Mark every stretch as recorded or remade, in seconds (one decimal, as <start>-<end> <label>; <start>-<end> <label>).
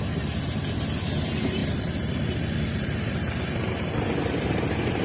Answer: 0.0-1.6 recorded; 1.6-4.6 remade; 4.6-5.0 recorded